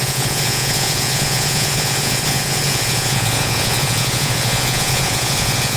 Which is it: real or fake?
fake